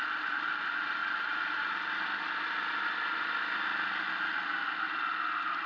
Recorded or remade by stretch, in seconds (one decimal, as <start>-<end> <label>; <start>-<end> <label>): 0.0-5.7 recorded